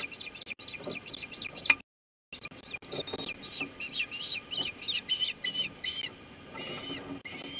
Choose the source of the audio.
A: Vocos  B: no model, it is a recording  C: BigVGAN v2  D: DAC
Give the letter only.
B